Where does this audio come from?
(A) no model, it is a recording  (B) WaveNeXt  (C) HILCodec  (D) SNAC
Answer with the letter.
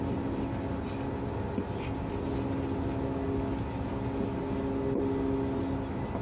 A